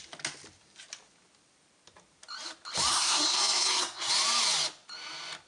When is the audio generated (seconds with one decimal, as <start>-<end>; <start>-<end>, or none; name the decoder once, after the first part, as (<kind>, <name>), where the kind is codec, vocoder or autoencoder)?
2.9-4.1 (codec, SNAC)